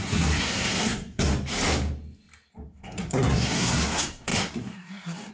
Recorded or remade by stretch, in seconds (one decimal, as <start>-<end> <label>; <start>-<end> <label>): 0.0-1.3 remade; 1.3-2.5 recorded; 2.5-5.3 remade